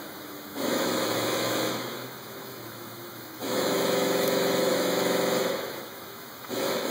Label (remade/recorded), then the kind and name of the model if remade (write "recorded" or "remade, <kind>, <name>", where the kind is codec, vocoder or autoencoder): remade, autoencoder, DAC-VAE